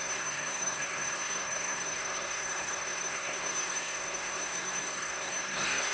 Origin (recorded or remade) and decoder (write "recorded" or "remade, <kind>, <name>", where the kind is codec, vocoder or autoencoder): remade, codec, SNAC